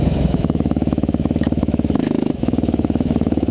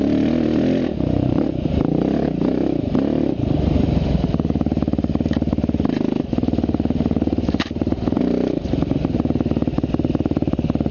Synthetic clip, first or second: first